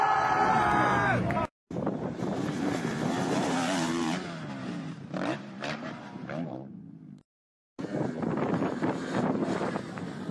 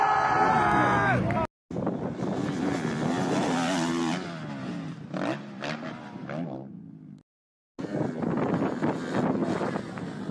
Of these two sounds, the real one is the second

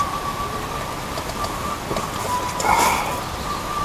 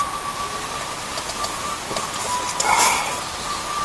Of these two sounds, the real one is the second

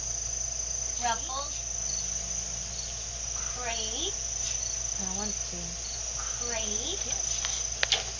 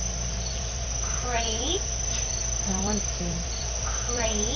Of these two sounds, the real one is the first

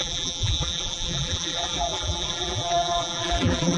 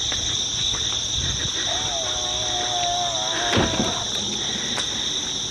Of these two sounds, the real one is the second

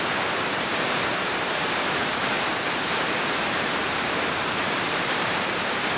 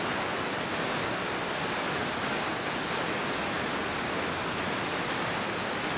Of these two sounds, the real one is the second